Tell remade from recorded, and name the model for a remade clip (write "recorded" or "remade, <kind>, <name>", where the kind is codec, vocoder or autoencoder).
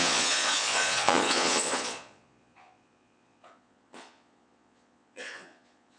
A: remade, vocoder, Vocos